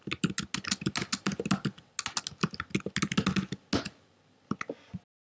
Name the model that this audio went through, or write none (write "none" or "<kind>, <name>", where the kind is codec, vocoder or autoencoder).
none